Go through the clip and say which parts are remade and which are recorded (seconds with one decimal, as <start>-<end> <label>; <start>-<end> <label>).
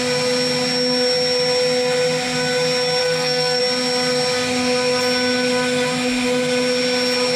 0.0-3.0 recorded; 3.0-3.6 remade; 3.6-7.4 recorded